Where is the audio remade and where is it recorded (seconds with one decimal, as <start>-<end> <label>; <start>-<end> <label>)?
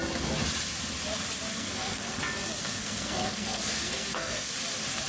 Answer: 0.0-1.5 recorded; 1.5-2.2 remade; 2.2-2.6 recorded; 2.6-4.5 remade; 4.5-5.1 recorded